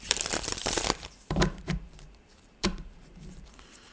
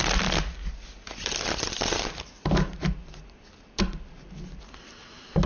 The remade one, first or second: first